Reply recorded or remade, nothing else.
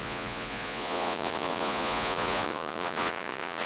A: remade